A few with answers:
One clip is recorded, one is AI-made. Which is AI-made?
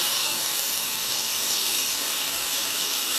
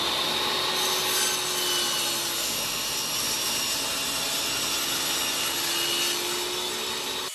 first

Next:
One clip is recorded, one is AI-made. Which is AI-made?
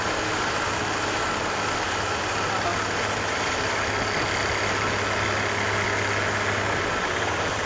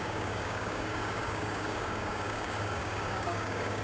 second